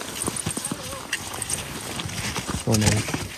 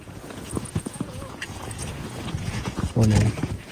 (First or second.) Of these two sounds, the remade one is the second